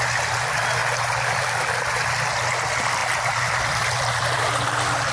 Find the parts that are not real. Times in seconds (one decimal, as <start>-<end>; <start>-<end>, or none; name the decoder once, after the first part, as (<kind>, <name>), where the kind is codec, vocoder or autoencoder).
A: 0.8-1.4 (vocoder, BigVGAN v2); 3.0-4.4